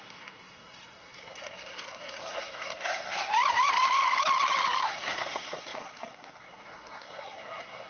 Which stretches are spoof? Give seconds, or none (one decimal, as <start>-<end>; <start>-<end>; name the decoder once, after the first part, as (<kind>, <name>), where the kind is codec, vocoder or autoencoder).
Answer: 0.0-3.3 (codec, SNAC); 4.8-7.9